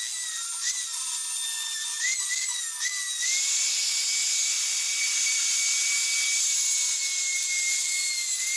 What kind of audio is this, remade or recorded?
recorded